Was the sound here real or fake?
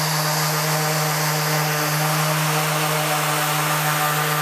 real